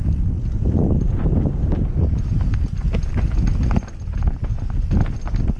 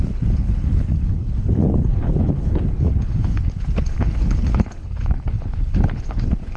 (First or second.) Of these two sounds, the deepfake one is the second